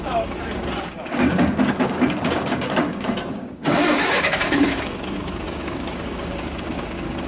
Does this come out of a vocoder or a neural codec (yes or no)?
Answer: yes